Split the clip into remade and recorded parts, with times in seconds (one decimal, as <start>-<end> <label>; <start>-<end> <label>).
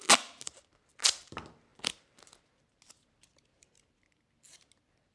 0.0-5.1 recorded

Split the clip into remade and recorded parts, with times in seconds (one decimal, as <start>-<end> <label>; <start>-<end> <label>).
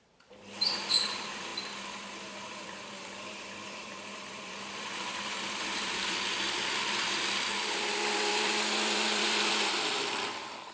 0.0-1.5 remade; 1.5-2.5 recorded; 2.5-10.7 remade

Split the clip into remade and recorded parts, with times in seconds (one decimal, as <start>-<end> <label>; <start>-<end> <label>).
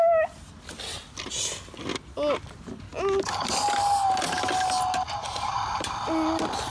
0.0-5.2 recorded; 5.2-6.0 remade; 6.0-6.7 recorded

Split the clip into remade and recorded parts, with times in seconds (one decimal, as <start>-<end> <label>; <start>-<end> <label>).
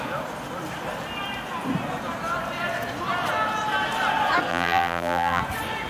0.0-4.5 recorded; 4.5-5.4 remade; 5.4-5.9 recorded